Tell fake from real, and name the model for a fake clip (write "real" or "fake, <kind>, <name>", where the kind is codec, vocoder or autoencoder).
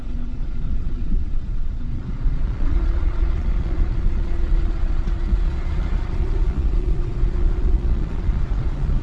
fake, vocoder, Vocos